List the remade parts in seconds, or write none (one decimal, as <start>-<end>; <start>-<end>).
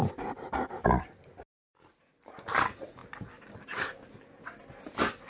none